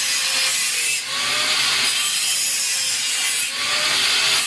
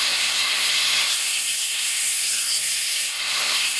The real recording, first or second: first